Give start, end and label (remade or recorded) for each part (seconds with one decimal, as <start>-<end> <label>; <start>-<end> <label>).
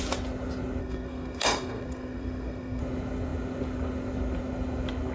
0.0-0.8 recorded; 0.8-2.8 remade; 2.8-5.1 recorded